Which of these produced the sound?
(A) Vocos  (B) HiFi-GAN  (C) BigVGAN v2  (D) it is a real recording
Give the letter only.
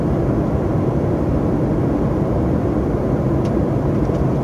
D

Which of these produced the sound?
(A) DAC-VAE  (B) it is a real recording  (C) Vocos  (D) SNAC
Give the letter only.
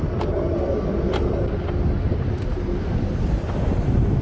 B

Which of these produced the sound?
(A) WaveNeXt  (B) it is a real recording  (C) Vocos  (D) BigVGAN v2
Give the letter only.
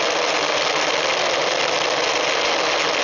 B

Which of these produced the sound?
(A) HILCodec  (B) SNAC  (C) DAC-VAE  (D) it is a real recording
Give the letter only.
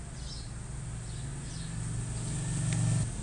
D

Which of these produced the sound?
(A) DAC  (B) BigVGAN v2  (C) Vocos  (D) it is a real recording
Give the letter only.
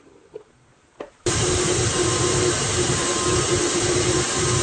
B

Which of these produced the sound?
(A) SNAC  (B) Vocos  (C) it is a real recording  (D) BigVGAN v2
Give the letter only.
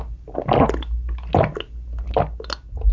C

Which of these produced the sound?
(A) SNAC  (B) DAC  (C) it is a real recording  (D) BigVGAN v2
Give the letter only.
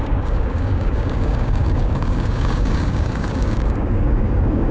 B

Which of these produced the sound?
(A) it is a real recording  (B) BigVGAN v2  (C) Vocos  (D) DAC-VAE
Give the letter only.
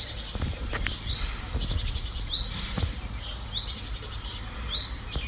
A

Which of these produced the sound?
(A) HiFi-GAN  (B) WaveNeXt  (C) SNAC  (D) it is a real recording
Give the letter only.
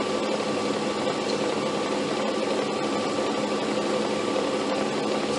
D